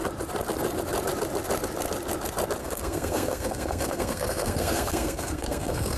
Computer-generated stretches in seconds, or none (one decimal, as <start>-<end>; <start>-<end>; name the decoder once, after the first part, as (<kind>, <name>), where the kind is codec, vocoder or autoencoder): 2.6-6.0 (codec, SNAC)

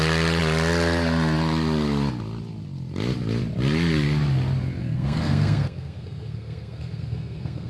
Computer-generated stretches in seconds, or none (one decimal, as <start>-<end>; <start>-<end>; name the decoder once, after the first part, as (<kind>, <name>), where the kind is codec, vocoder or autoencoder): 4.8-7.7 (codec, SNAC)

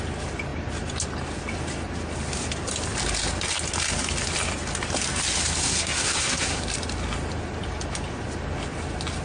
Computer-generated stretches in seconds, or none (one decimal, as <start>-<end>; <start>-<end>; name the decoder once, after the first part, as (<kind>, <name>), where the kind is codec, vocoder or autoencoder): 5.6-6.6 (codec, SNAC)

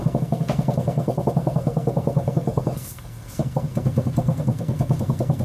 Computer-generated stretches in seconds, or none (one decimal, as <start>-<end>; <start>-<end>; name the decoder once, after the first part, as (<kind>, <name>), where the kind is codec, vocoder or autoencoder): 0.0-5.4 (codec, SNAC)

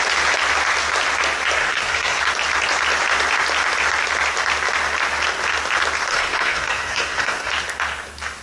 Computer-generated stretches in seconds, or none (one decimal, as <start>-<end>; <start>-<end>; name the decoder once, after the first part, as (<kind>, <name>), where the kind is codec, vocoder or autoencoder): 1.6-2.2 (codec, SNAC); 6.1-7.5

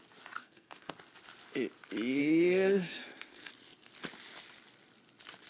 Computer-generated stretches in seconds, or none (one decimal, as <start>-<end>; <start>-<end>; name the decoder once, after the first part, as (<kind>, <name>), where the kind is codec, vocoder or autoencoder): 0.4-0.9 (codec, SNAC); 2.2-3.5

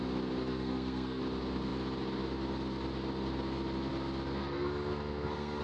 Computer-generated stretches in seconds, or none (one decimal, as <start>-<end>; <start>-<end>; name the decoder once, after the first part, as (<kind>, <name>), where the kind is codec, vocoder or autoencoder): 0.4-1.2 (codec, SNAC); 4.4-5.6

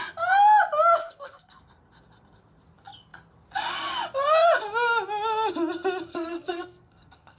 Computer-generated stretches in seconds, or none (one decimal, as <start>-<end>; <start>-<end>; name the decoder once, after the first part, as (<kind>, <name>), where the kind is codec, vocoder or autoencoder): 1.0-1.6 (codec, SNAC); 6.1-7.4